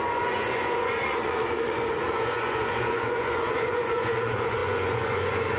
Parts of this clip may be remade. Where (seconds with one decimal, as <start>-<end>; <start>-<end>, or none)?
0.0-5.6